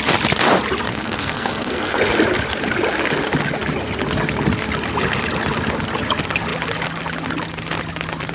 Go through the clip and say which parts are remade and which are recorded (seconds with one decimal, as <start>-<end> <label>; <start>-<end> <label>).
0.0-0.9 recorded; 0.9-2.0 remade; 2.0-8.3 recorded